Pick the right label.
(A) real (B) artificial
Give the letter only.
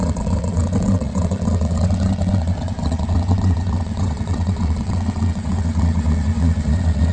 B